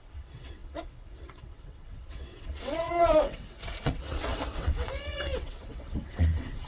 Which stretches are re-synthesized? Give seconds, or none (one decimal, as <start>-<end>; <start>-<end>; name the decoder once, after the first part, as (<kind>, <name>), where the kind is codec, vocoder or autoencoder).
0.0-6.7 (vocoder, WaveNeXt)